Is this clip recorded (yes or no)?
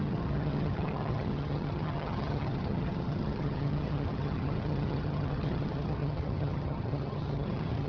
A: no